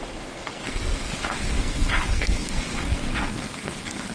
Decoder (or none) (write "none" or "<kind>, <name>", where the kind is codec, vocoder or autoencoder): codec, SNAC